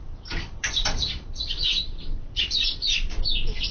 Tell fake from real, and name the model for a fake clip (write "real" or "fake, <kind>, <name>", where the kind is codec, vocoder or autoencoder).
fake, vocoder, BigVGAN v2